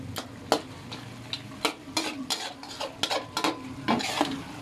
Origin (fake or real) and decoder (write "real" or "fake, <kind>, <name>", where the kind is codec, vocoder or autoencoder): real